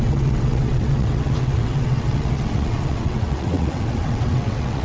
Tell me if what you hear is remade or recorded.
remade